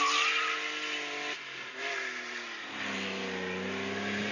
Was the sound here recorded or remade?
recorded